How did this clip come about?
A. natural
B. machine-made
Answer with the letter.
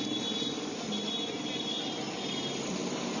A